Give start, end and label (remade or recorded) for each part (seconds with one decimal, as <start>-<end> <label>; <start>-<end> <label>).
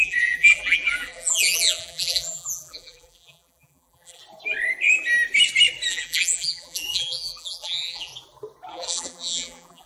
0.0-4.2 remade; 4.2-5.9 recorded; 5.9-8.1 remade; 8.1-8.7 recorded; 8.7-9.9 remade